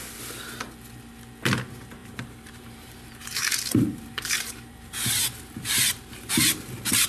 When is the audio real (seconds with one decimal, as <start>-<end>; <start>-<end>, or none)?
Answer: 0.0-2.0; 6.3-7.1